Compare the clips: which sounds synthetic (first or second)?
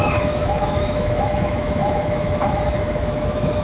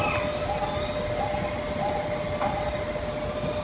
first